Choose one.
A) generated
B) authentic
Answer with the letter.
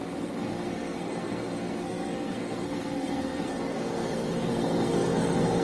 A